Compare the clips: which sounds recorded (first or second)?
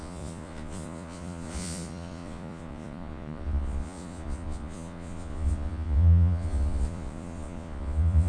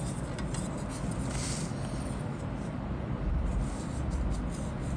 second